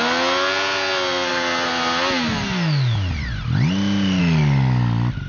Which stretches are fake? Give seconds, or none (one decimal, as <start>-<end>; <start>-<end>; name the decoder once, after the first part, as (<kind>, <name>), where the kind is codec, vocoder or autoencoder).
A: none